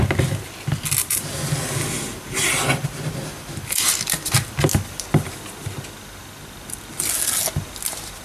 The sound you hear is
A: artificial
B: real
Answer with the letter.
B